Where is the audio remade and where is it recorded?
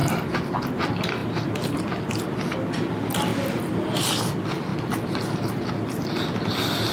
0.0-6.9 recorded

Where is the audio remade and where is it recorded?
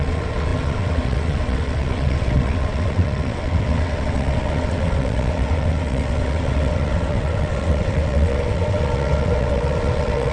0.0-10.3 remade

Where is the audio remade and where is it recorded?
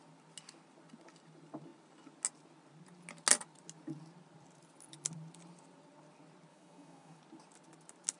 0.0-6.5 recorded; 6.5-7.2 remade; 7.2-8.2 recorded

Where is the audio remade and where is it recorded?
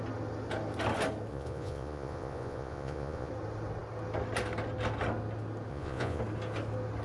0.0-1.3 recorded; 1.3-3.3 remade; 3.3-5.7 recorded; 5.7-6.2 remade; 6.2-7.0 recorded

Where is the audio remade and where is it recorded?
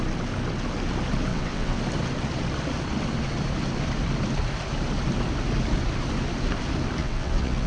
0.0-1.3 recorded; 1.3-1.8 remade; 1.8-7.0 recorded; 7.0-7.7 remade